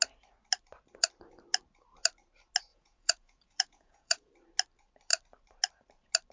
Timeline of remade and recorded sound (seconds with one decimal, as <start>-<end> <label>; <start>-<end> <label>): 0.0-2.7 recorded; 2.7-4.3 remade; 4.3-6.3 recorded

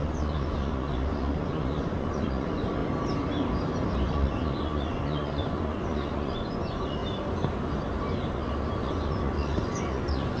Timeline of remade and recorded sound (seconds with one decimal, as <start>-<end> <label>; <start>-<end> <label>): 0.0-2.8 remade; 2.8-4.1 recorded; 4.1-7.0 remade; 7.0-8.3 recorded; 8.3-10.4 remade

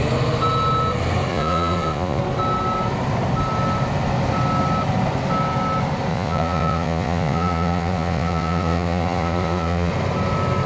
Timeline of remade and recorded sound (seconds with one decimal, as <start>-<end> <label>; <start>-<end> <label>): 0.0-1.3 recorded; 1.3-2.2 remade; 2.2-6.1 recorded; 6.1-9.9 remade; 9.9-10.7 recorded

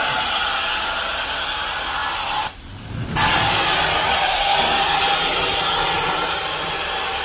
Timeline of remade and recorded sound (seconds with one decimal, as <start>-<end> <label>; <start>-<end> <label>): 0.0-7.2 recorded

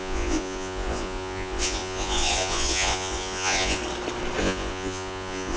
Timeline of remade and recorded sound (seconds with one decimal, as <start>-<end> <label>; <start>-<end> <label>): 0.0-3.8 remade; 3.8-4.4 recorded; 4.4-5.6 remade

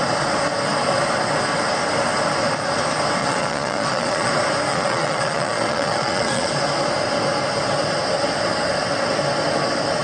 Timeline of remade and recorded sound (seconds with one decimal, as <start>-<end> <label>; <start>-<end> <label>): 0.0-3.2 recorded; 3.2-4.3 remade; 4.3-4.7 recorded; 4.7-6.5 remade; 6.5-10.0 recorded